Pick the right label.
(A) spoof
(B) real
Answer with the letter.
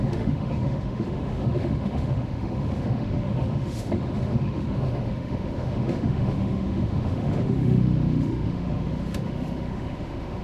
A